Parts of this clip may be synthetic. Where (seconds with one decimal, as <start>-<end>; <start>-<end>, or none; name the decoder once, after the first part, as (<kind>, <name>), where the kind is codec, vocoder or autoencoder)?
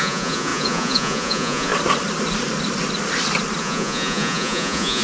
0.0-1.7 (vocoder, Vocos); 3.6-5.0